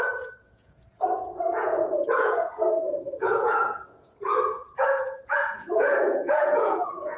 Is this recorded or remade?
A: remade